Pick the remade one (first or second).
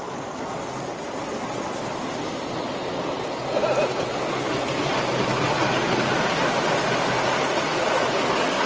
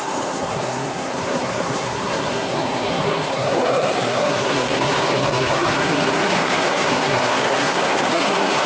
second